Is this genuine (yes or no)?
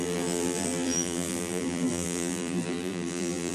no